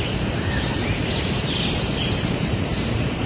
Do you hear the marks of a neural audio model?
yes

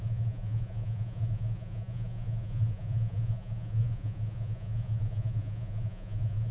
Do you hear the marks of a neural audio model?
yes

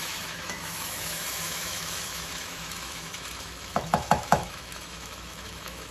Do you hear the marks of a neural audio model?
yes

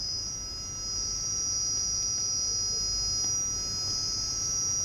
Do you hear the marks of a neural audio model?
no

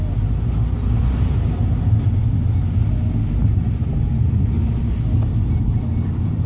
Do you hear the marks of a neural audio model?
no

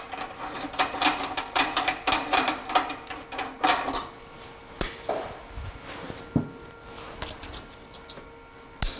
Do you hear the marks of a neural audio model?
no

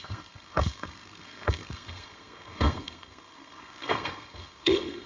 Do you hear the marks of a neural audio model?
yes